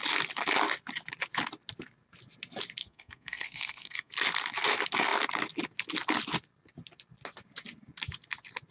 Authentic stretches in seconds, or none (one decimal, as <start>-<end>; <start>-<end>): 0.0-2.8; 4.1-8.7